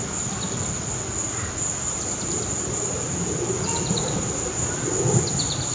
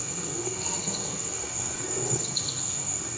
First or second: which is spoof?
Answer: second